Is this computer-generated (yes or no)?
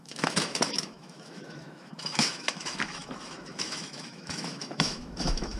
yes